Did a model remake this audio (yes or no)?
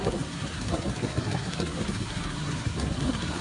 yes